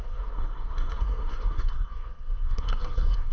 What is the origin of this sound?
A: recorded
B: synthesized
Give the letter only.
B